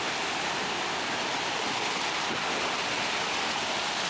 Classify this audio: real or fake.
real